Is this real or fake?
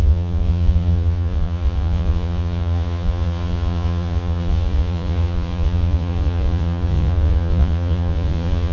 fake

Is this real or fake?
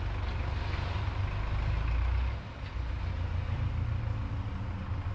real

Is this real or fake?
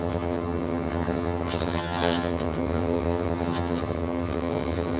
fake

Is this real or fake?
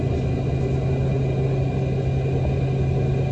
real